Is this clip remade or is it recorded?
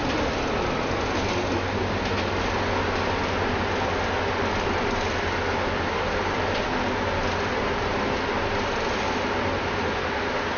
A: recorded